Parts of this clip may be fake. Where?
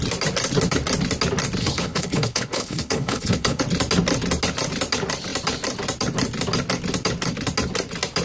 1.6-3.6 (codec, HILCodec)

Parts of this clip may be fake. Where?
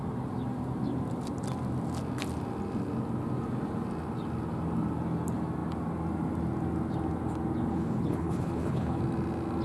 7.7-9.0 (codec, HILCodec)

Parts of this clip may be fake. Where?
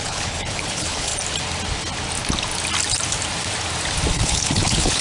0.0-1.1 (codec, HILCodec); 4.1-5.0